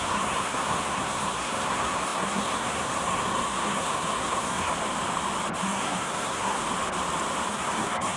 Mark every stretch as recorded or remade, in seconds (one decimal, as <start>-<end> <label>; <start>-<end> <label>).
0.0-4.7 remade; 4.7-5.6 recorded; 5.6-6.6 remade; 6.6-7.5 recorded; 7.5-8.2 remade